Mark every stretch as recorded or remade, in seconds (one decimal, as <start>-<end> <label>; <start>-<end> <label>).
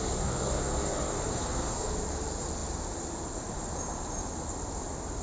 0.0-1.3 recorded; 1.3-1.9 remade; 1.9-5.2 recorded